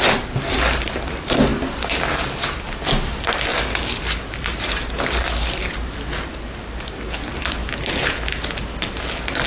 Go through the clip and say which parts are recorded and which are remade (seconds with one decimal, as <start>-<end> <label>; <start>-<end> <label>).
0.0-9.5 recorded